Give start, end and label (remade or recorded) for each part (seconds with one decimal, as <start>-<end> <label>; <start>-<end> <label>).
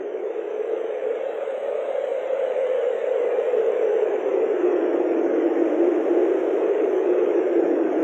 0.0-5.6 remade; 5.6-6.6 recorded; 6.6-8.0 remade